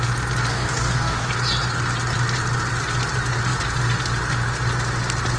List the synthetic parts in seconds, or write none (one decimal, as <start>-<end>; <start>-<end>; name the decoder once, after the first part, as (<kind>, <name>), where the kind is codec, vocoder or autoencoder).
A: 0.5-1.3 (codec, DAC)